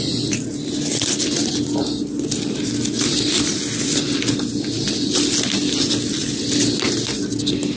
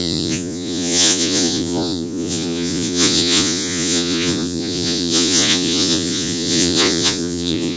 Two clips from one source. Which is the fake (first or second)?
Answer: second